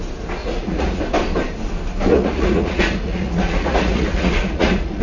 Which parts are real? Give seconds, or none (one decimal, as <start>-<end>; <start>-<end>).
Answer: 0.0-0.4; 1.0-2.1